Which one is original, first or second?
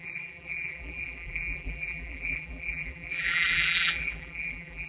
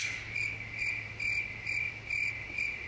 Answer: second